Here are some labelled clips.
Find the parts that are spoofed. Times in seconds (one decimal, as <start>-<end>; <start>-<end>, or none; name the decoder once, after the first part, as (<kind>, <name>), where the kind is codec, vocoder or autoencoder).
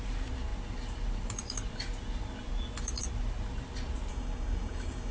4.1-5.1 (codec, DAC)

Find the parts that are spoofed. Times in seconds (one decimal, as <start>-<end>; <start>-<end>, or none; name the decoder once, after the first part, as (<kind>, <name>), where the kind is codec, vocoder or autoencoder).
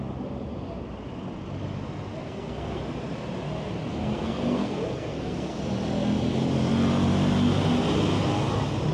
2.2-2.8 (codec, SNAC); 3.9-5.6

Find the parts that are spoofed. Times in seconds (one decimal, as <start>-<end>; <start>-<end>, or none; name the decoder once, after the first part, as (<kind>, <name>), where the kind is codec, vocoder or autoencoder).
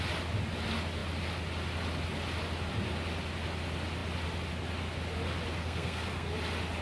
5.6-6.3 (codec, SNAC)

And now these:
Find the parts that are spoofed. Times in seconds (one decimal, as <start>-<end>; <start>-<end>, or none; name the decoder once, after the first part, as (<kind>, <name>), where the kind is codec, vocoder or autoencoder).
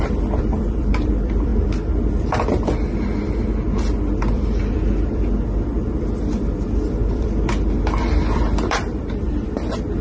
0.0-1.5 (vocoder, BigVGAN v2); 4.2-10.0